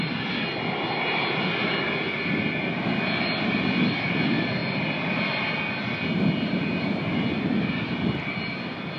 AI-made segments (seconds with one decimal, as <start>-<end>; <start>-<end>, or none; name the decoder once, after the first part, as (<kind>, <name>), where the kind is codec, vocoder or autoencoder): none